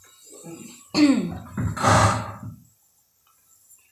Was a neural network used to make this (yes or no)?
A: no